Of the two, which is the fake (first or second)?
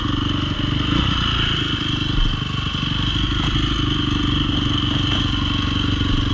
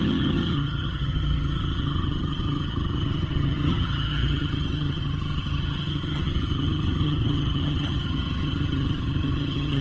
second